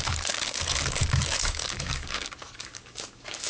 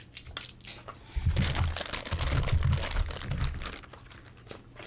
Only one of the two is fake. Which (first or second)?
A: first